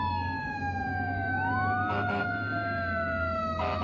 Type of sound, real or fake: fake